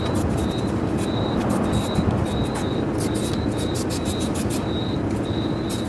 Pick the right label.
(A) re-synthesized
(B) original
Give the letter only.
B